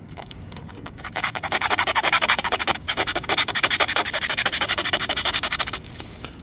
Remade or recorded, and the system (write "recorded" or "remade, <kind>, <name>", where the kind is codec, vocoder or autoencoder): remade, codec, DAC